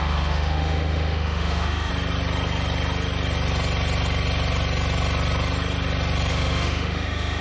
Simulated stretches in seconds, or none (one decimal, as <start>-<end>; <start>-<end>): 0.0-1.9; 6.3-7.4